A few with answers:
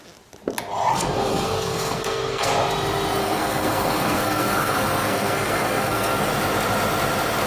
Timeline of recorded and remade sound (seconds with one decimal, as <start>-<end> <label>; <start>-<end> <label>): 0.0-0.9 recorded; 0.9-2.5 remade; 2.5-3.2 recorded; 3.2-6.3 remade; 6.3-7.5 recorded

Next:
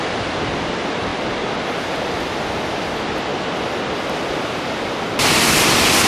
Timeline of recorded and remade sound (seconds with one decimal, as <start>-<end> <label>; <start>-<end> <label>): 0.0-6.1 recorded

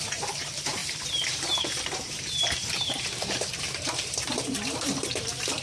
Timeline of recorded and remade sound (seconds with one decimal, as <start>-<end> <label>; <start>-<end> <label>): 0.0-5.6 remade

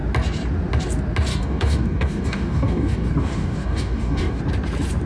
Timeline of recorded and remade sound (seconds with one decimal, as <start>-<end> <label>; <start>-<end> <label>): 0.0-1.3 recorded; 1.3-4.4 remade; 4.4-5.1 recorded

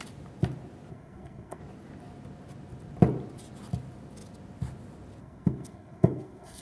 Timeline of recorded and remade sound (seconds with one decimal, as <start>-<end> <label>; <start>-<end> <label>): 0.0-0.9 recorded; 0.9-1.6 remade; 1.6-5.2 recorded; 5.2-6.6 remade